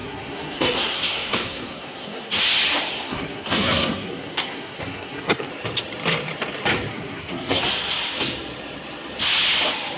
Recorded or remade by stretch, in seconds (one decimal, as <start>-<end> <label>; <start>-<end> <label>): 0.0-2.4 remade; 2.4-2.9 recorded; 2.9-5.5 remade; 5.5-6.9 recorded; 6.9-7.6 remade; 7.6-10.0 recorded